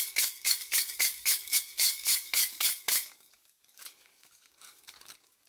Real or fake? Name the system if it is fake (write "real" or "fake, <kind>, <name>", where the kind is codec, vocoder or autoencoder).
fake, codec, DAC